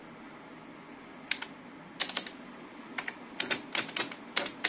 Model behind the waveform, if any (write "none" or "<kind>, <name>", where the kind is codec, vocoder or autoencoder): none